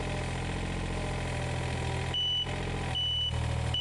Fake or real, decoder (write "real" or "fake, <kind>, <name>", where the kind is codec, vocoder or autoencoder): real